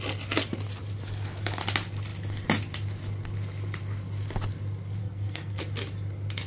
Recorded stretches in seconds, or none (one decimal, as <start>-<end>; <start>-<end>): 0.0-5.0; 5.6-6.5